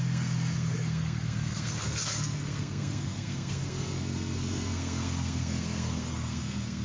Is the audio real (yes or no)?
no